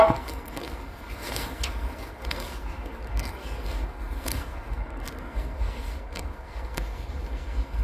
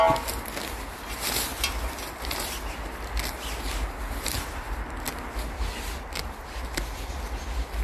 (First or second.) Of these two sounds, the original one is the second